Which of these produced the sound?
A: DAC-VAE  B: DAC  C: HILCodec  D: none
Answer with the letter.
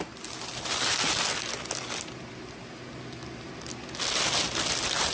D